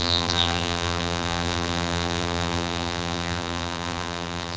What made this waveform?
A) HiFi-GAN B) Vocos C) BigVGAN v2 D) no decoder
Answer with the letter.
C